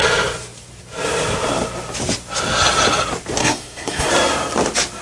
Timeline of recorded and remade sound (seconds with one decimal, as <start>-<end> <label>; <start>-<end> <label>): 0.0-3.4 recorded; 3.4-4.1 remade; 4.1-5.0 recorded